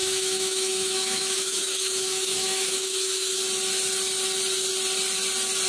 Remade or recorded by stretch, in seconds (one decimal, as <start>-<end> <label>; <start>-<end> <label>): 0.0-3.4 remade; 3.4-5.7 recorded